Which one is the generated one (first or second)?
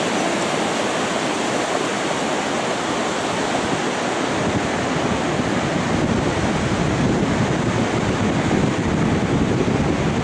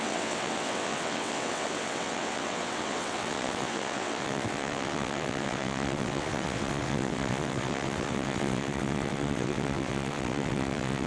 second